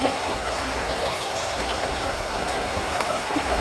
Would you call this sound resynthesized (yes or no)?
yes